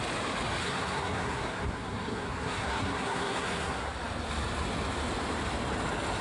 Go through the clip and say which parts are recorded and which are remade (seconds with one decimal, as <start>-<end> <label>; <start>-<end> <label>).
0.0-0.6 recorded; 0.6-3.9 remade; 3.9-6.2 recorded